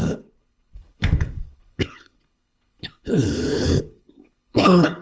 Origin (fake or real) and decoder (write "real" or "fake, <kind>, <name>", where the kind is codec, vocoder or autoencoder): fake, codec, HILCodec